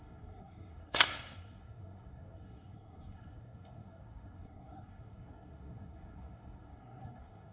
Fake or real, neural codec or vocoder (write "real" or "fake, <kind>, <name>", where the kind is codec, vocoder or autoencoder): fake, codec, SNAC